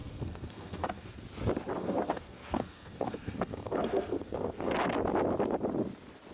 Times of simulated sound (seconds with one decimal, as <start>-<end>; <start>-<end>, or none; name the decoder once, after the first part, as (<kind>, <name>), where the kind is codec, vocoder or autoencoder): 0.0-1.1 (codec, SNAC); 1.8-4.7